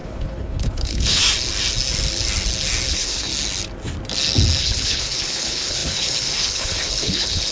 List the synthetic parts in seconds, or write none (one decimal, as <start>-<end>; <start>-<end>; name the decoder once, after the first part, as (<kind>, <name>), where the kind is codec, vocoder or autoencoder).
0.0-1.2 (codec, HILCodec); 2.9-3.3; 4.6-7.5